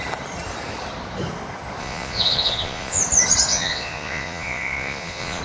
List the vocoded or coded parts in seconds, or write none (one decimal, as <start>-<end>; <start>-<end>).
1.8-3.0; 3.5-5.4